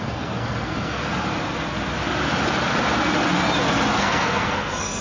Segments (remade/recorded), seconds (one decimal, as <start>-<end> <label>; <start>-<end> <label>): 0.0-1.0 remade; 1.0-4.0 recorded; 4.0-5.0 remade